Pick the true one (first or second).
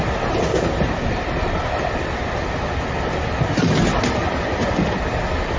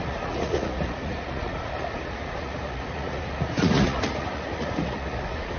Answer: first